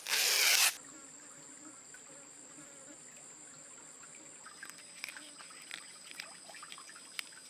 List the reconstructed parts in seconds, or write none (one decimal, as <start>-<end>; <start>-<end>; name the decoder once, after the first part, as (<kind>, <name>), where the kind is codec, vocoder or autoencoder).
none

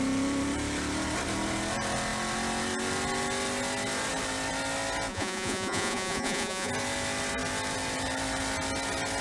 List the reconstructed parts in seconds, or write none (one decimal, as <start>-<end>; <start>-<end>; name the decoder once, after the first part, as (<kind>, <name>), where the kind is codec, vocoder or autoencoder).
5.1-6.7 (vocoder, Vocos)

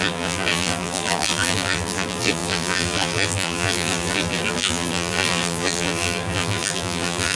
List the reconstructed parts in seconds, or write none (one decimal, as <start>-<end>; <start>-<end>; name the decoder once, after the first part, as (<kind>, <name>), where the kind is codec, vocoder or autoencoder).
0.0-7.4 (vocoder, BigVGAN v2)

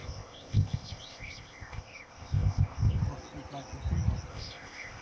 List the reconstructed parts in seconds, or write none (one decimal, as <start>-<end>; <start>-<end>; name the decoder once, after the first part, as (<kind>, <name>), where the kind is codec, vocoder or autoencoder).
0.0-3.0 (codec, ZipCodec); 4.3-5.0

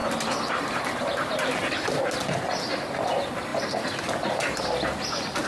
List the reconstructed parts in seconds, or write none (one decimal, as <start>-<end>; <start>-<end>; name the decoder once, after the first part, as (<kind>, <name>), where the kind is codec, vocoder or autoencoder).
0.0-2.1 (vocoder, BigVGAN v2); 3.5-4.6